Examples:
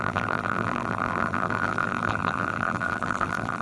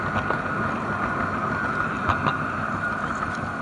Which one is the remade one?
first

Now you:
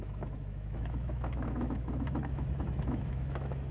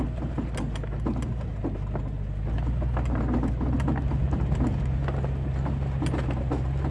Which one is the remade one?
first